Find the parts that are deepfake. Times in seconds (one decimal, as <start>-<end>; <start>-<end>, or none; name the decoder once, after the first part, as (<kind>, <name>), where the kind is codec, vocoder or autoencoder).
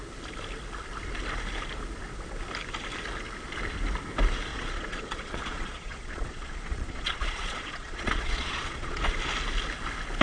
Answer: 4.5-9.1 (vocoder, Vocos)